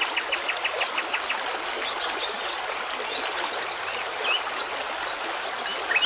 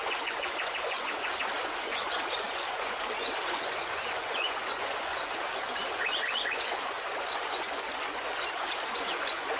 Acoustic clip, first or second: first